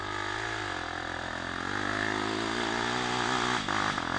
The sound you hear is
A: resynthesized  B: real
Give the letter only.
B